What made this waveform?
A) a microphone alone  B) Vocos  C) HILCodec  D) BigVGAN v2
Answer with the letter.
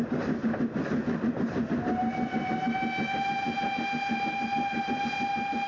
A